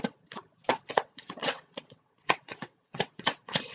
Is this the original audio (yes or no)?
no